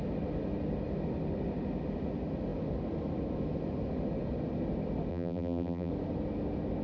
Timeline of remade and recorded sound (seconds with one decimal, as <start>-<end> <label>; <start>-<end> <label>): 0.0-5.1 recorded; 5.1-5.9 remade; 5.9-6.8 recorded